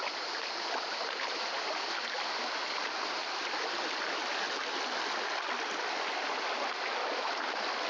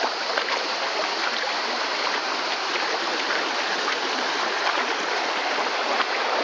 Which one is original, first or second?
first